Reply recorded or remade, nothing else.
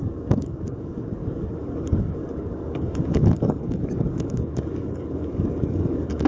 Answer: remade